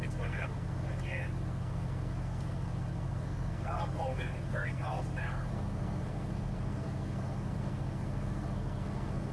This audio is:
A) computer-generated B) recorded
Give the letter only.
A